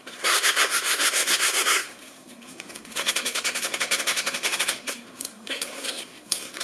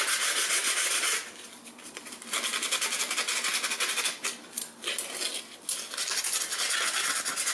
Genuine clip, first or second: second